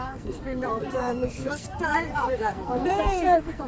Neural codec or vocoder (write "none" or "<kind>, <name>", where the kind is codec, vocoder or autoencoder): codec, SNAC